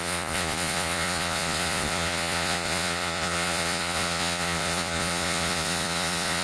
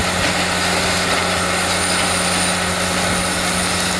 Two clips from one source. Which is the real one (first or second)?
second